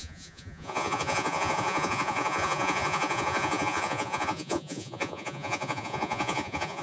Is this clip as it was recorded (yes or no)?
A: no